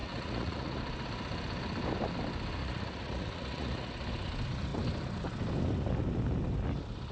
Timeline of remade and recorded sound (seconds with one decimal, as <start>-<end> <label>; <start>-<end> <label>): 0.0-0.8 remade; 0.8-2.6 recorded; 2.6-3.9 remade; 3.9-7.1 recorded